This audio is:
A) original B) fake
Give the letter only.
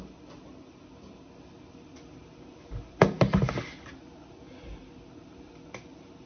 A